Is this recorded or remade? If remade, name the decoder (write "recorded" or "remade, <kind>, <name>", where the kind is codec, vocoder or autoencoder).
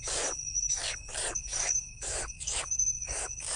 remade, codec, DAC